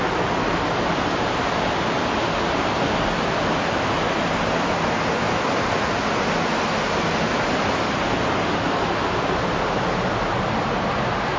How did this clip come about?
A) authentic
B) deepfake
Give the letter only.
A